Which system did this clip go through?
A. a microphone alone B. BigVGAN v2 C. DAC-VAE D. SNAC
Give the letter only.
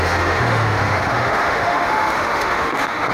C